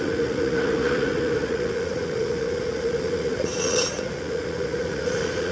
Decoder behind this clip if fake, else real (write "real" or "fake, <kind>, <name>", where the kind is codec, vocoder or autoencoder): fake, vocoder, Vocos